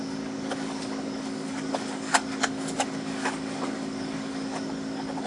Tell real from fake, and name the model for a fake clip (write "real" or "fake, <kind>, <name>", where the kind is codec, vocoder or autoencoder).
fake, codec, DAC